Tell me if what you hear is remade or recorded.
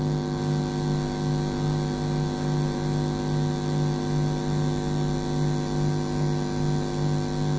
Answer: recorded